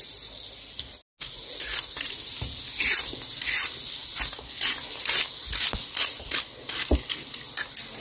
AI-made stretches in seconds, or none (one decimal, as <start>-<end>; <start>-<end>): none